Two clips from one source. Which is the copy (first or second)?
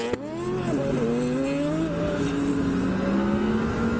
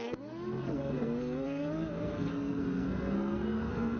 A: second